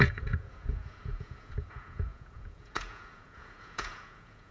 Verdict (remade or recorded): remade